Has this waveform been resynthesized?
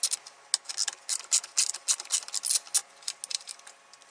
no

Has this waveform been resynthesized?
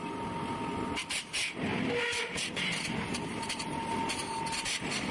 no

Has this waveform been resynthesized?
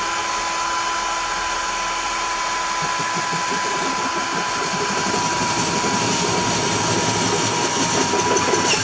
no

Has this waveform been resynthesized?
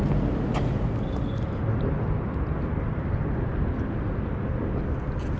no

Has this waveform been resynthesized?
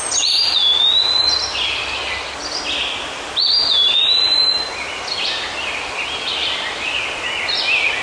no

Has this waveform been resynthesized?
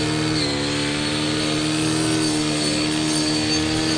no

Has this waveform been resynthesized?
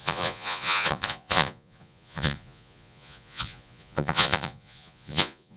yes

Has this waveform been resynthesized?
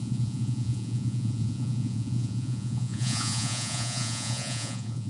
yes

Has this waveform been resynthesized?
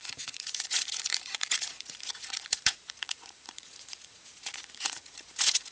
yes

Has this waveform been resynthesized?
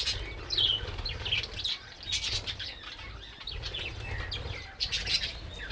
no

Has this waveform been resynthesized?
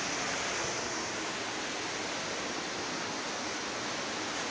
no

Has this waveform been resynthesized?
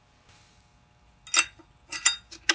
no